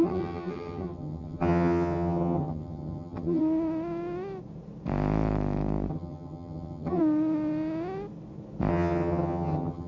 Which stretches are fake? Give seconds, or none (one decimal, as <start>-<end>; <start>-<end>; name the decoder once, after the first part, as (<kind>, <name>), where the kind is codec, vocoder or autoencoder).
0.0-3.4 (vocoder, HiFi-GAN); 5.9-7.0; 8.7-9.9